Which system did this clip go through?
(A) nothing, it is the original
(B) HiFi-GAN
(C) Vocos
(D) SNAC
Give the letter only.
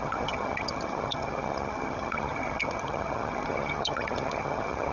B